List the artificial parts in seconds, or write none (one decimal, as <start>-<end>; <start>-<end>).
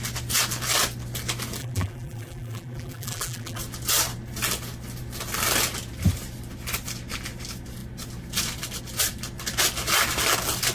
1.6-3.6